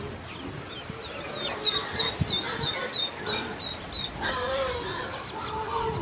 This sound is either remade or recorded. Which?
recorded